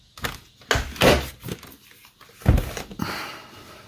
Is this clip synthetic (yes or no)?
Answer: no